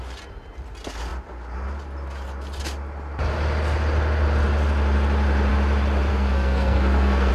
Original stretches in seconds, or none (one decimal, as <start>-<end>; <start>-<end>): 0.0-6.1